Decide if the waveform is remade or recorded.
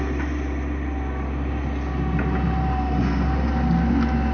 recorded